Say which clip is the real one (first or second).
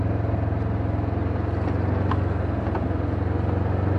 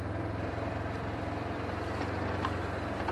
first